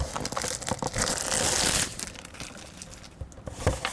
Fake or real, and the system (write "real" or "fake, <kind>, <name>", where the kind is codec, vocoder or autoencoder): real